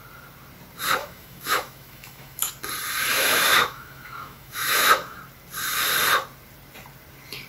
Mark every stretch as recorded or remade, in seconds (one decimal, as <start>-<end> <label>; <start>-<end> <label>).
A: 0.0-1.0 recorded; 1.0-2.5 remade; 2.5-3.1 recorded; 3.1-5.2 remade; 5.2-7.5 recorded